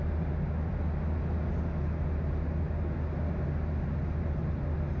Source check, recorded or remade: recorded